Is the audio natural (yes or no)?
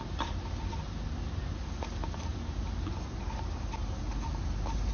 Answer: yes